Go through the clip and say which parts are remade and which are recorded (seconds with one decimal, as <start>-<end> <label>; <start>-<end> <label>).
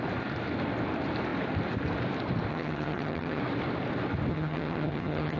0.0-2.5 recorded; 2.5-3.4 remade; 3.4-4.3 recorded; 4.3-5.4 remade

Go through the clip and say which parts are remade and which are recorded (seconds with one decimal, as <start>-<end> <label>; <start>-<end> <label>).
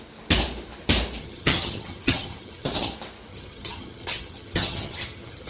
0.0-1.2 recorded; 1.2-2.9 remade; 2.9-3.3 recorded; 3.3-5.5 remade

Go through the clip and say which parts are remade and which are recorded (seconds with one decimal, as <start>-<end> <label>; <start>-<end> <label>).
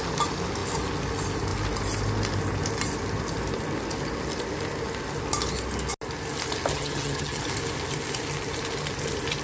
0.0-6.7 recorded; 6.7-7.4 remade; 7.4-9.4 recorded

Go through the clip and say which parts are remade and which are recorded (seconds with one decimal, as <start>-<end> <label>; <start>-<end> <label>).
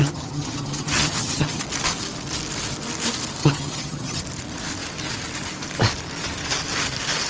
0.0-1.6 remade; 1.6-3.4 recorded; 3.4-4.2 remade; 4.2-7.3 recorded